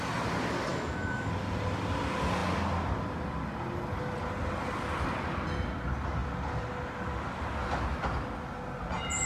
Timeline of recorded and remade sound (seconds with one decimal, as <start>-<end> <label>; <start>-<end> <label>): 0.0-0.7 recorded; 0.7-1.3 remade; 1.3-9.3 recorded